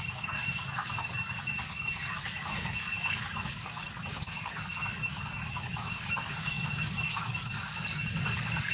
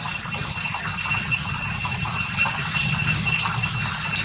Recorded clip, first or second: second